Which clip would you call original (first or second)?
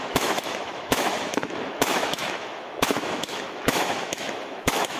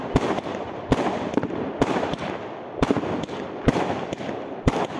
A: second